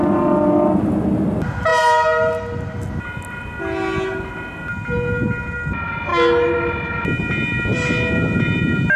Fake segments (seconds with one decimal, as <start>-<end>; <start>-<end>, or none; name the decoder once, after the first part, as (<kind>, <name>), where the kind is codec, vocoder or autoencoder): none